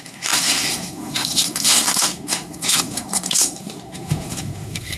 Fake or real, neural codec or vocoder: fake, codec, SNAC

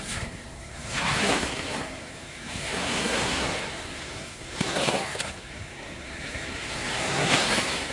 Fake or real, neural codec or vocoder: fake, codec, SNAC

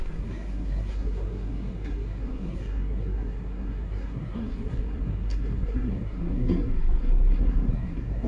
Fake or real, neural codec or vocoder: fake, codec, SNAC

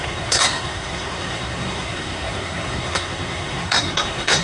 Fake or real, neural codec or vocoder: fake, codec, SNAC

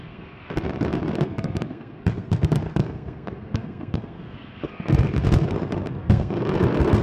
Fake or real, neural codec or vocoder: fake, codec, SNAC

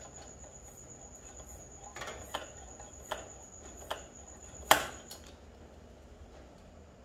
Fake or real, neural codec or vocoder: real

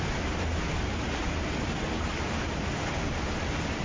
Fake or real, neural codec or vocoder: real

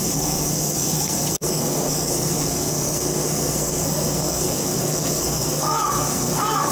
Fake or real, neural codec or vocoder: fake, codec, SNAC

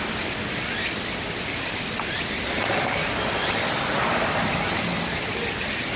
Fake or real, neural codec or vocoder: real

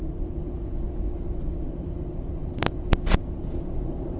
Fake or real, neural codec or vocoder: real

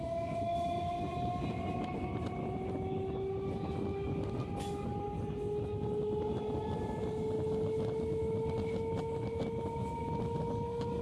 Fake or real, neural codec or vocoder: real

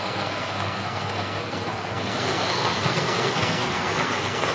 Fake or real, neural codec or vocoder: fake, codec, SNAC